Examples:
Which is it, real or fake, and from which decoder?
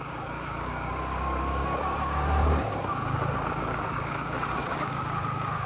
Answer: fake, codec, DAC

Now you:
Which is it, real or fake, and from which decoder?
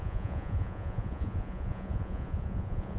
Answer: fake, vocoder, Vocos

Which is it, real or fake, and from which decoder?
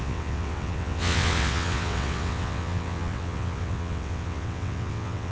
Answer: fake, vocoder, WaveNeXt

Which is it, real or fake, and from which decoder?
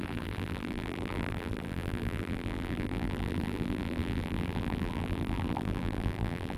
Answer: fake, vocoder, BigVGAN v2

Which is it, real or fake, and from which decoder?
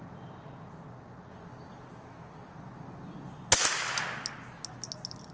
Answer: real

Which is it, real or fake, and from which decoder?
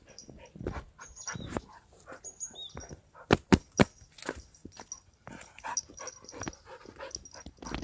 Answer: real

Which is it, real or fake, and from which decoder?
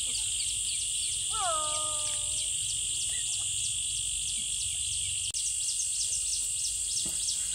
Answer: real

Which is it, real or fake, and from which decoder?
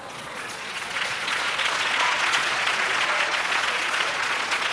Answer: fake, vocoder, Vocos